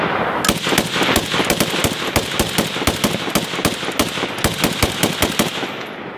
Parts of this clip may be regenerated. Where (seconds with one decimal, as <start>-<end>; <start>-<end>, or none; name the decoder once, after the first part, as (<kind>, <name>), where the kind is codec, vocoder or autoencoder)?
none